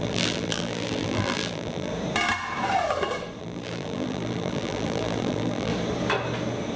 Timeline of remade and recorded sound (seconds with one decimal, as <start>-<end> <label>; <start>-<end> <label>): 0.0-1.9 remade; 1.9-3.4 recorded; 3.4-5.7 remade; 5.7-6.8 recorded